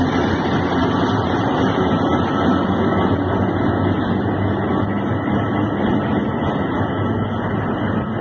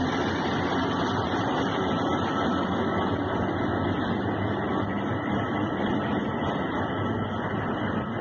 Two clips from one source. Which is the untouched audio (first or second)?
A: first